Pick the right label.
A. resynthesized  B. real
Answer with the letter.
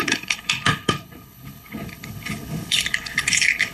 A